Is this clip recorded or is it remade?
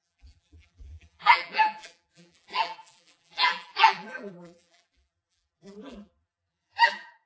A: remade